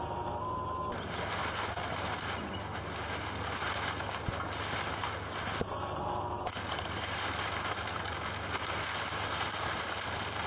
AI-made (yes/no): no